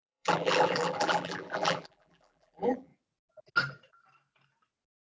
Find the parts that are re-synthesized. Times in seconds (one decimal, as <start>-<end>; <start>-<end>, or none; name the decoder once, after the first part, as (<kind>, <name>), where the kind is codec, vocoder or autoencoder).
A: 0.0-2.9 (vocoder, BigVGAN v2)